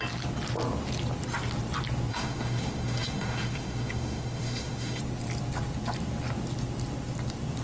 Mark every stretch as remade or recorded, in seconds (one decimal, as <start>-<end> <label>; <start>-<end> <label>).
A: 0.0-2.1 recorded; 2.1-5.0 remade; 5.0-7.6 recorded